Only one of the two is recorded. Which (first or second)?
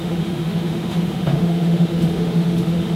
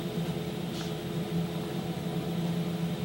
second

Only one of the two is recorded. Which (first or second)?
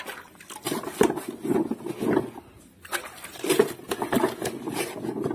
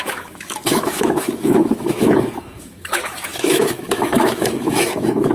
first